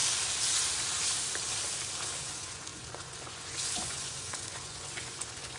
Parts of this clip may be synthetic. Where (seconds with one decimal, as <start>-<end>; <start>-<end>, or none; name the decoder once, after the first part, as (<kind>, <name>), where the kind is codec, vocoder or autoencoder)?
2.2-5.6 (vocoder, Vocos)